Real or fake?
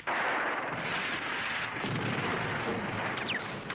real